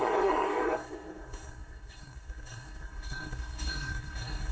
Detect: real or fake fake